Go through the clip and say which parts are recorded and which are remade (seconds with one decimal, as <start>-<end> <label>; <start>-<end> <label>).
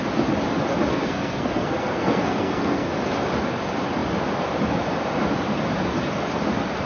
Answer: 0.0-0.9 recorded; 0.9-2.9 remade; 2.9-6.9 recorded